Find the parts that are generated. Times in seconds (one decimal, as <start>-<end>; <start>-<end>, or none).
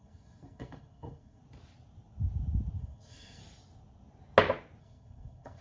0.0-1.4; 2.8-3.4; 4.8-5.6